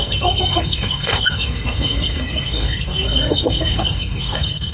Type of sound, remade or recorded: remade